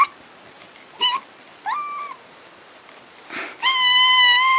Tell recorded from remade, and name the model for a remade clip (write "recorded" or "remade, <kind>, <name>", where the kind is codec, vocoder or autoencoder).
recorded